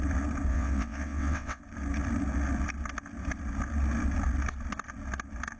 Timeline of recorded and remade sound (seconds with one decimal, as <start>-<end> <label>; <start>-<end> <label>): 0.0-0.5 recorded; 0.5-1.6 remade; 1.6-5.6 recorded

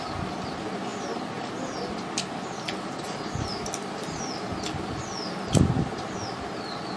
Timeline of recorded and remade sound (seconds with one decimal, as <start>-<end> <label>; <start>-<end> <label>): 0.0-7.0 recorded